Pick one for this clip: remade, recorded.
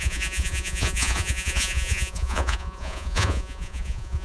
remade